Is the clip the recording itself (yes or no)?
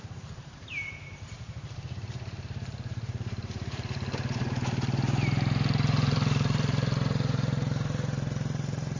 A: no